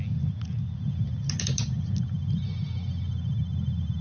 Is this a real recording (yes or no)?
yes